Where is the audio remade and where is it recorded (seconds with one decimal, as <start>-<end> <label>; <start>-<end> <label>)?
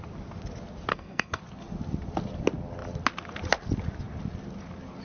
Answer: 0.0-0.9 recorded; 0.9-1.4 remade; 1.4-5.0 recorded